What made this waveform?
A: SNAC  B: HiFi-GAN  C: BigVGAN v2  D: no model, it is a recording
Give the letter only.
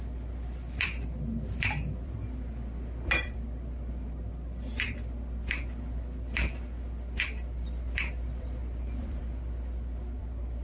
C